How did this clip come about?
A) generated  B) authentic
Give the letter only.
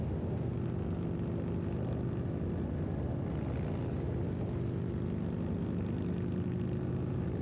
B